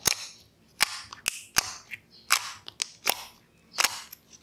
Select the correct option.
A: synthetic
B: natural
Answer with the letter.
B